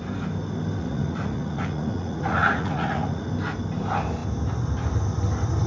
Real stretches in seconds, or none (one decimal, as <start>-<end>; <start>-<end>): 0.0-0.8; 3.3-5.7